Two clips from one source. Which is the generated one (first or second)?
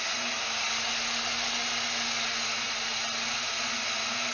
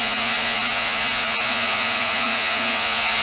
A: second